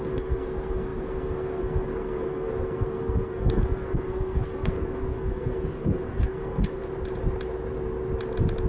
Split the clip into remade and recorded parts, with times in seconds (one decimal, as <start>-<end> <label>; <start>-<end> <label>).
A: 0.0-6.8 remade; 6.8-8.7 recorded